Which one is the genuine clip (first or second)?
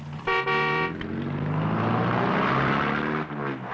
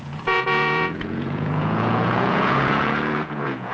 first